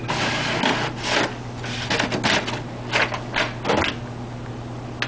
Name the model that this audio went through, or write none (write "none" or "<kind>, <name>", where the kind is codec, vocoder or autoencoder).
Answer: none